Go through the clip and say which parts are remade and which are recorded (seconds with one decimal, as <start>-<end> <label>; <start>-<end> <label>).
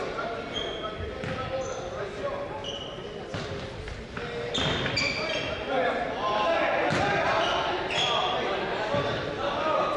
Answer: 0.0-10.0 recorded